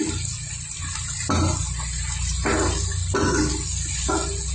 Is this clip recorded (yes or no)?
yes